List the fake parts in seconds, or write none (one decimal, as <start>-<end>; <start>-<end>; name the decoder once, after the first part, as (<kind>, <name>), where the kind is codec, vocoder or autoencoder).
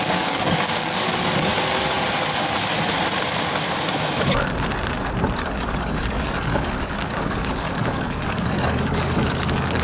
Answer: 0.0-1.5 (codec, DAC); 5.4-9.8